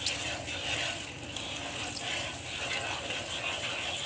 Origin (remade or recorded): recorded